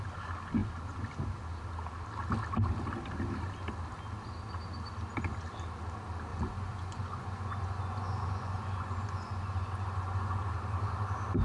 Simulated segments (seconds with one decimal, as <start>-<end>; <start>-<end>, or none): 6.3-10.4